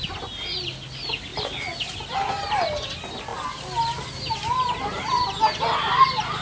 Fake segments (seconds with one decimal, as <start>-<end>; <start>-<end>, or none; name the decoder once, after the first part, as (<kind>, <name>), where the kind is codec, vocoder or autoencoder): none